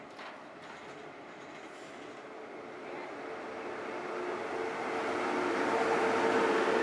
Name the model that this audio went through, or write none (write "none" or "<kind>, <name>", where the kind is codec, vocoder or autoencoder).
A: none